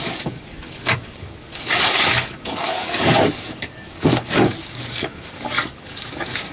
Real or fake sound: fake